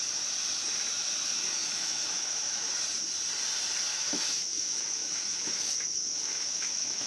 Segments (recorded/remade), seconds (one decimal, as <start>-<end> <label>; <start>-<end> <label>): 0.0-1.3 recorded; 1.3-2.7 remade; 2.7-3.9 recorded; 3.9-7.1 remade